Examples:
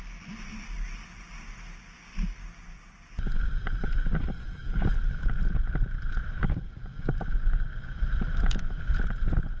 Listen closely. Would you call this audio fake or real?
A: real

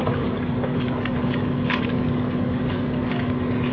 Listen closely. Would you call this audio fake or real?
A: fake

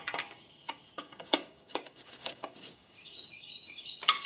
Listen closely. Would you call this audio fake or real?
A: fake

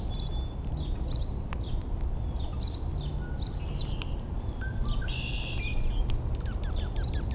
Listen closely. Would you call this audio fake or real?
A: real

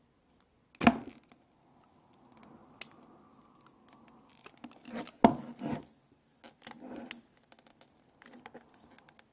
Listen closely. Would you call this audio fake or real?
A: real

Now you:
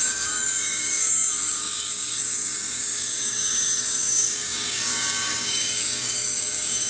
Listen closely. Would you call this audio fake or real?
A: fake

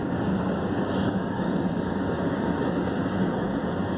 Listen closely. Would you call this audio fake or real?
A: fake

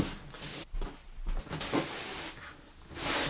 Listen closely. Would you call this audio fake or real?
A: real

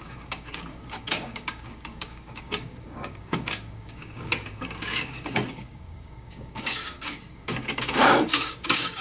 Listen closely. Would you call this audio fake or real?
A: fake